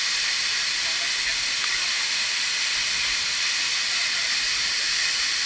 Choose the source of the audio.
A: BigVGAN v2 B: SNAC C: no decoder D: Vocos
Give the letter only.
C